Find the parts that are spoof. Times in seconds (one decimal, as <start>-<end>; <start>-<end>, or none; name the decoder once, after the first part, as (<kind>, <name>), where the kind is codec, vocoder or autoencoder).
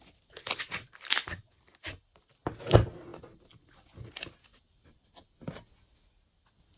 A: 3.1-3.6 (vocoder, BigVGAN v2); 4.5-5.5